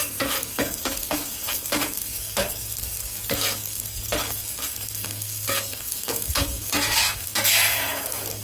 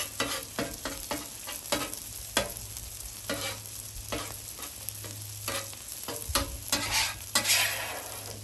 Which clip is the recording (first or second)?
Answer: second